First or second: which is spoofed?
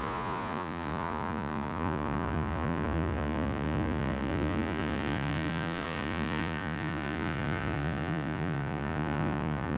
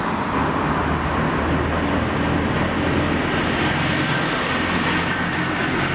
first